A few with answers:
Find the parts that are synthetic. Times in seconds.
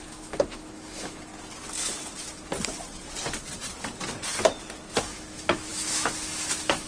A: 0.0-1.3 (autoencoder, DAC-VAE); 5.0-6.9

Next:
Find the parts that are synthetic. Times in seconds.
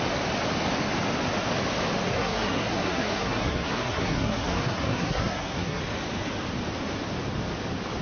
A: 2.1-5.8 (codec, SNAC)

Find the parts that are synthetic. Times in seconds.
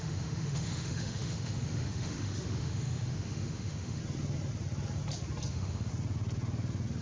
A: 0.0-4.0 (autoencoder, DAC-VAE); 5.5-5.9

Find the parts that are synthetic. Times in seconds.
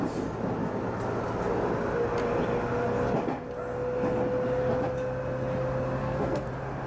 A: 6.0-6.5 (codec, SNAC)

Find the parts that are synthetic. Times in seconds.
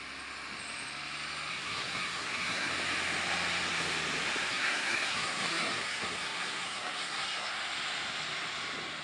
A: 1.5-2.7 (codec, SNAC); 4.5-7.5